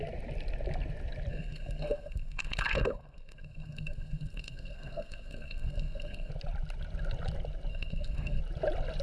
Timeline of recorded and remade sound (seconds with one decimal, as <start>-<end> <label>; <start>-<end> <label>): 0.0-1.3 recorded; 1.3-6.3 remade; 6.3-7.7 recorded; 7.7-8.4 remade; 8.4-9.0 recorded